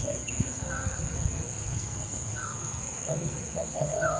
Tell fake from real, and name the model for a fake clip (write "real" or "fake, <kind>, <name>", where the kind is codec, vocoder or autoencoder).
fake, codec, SNAC